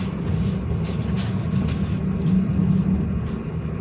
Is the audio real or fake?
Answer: real